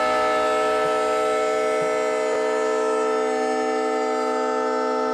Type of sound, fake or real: real